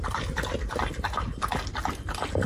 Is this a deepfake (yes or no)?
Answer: no